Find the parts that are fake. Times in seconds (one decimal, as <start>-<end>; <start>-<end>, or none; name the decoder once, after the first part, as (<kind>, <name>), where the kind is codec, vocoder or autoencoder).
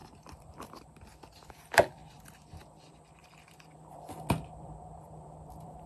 0.0-5.9 (vocoder, BigVGAN v2)